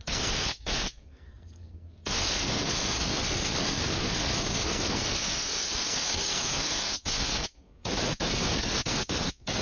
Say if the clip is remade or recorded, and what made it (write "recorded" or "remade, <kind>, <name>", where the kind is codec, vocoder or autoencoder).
remade, codec, SNAC